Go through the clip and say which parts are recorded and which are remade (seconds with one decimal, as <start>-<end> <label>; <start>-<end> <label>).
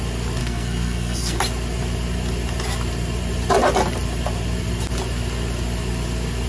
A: 0.0-0.4 recorded; 0.4-1.4 remade; 1.4-6.5 recorded